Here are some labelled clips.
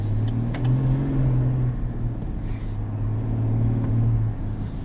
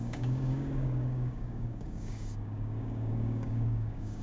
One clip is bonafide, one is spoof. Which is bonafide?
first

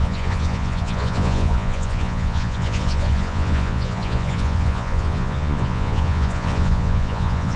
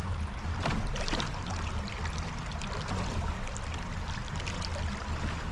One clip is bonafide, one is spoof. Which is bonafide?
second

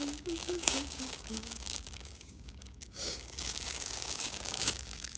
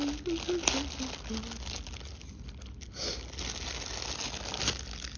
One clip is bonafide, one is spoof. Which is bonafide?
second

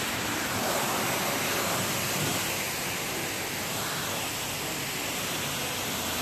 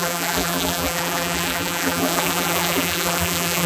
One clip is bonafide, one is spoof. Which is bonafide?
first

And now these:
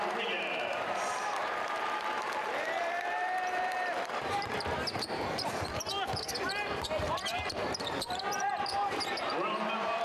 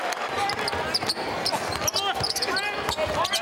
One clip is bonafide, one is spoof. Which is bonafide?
second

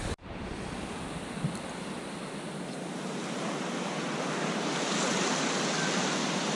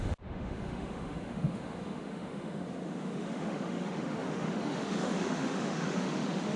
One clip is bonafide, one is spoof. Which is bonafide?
first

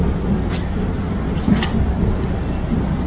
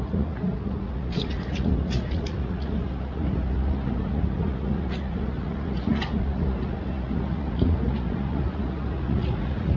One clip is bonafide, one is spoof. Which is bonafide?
first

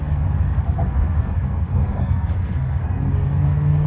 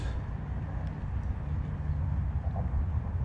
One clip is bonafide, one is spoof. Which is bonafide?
second